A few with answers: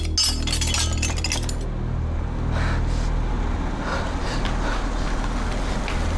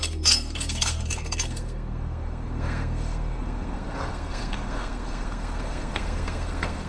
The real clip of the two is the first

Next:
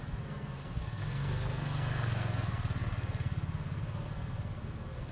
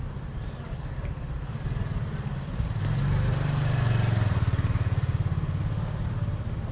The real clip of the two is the second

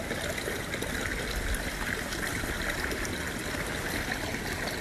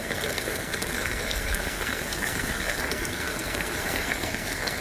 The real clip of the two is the first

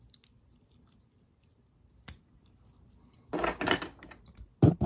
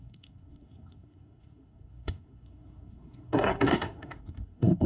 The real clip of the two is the first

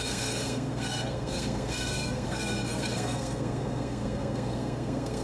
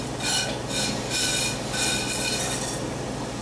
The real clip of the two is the second